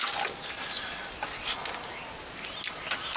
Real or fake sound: real